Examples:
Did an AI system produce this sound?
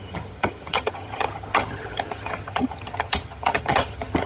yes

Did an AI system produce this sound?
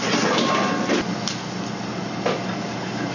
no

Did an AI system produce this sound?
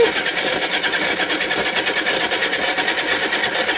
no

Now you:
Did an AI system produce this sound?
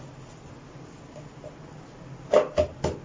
no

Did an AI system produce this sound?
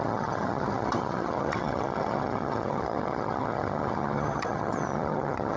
yes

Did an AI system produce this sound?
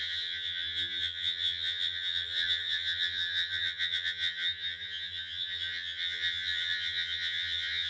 yes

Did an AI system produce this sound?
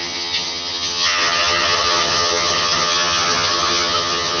yes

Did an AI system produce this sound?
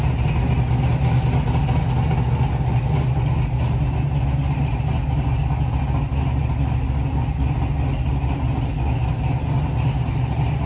no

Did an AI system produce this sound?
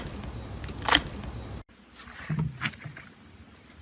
no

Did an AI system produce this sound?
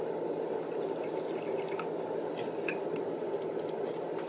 no